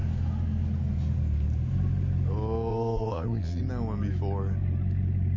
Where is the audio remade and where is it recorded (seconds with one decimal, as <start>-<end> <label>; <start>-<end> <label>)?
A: 0.0-2.7 recorded; 2.7-3.6 remade; 3.6-5.4 recorded